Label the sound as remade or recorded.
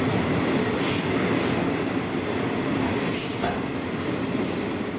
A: recorded